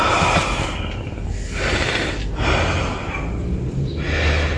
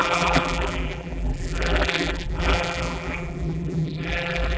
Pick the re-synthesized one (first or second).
second